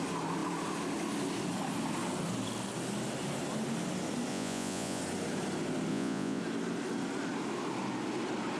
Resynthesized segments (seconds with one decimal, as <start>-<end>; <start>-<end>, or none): 4.3-5.0; 5.9-6.4